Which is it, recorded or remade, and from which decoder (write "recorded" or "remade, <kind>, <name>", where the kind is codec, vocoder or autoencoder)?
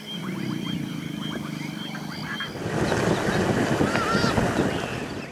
recorded